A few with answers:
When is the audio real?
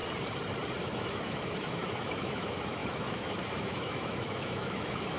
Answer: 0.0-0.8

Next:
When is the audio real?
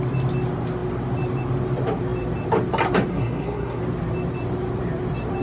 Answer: 0.0-3.1; 3.8-5.4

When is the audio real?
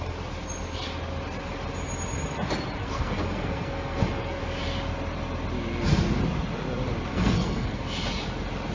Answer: 0.0-2.8; 4.4-7.1; 7.8-8.7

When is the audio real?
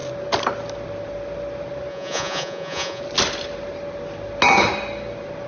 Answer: 0.0-1.9; 3.0-5.5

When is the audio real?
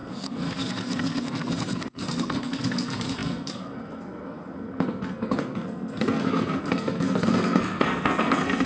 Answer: none